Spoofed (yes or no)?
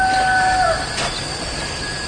no